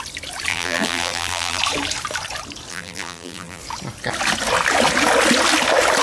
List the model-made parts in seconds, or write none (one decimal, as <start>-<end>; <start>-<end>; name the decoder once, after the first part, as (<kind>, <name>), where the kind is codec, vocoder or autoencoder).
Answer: 0.5-1.6 (vocoder, BigVGAN v2); 2.7-3.6